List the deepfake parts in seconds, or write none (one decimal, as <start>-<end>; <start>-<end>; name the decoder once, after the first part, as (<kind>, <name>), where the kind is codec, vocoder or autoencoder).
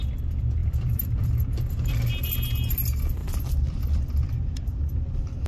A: 0.6-1.9 (vocoder, BigVGAN v2); 3.2-5.5